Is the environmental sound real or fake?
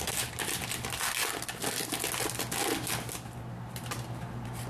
real